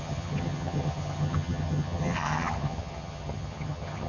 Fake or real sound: fake